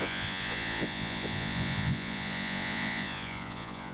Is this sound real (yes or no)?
no